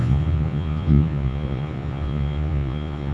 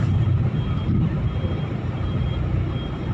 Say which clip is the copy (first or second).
first